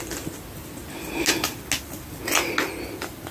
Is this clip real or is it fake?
real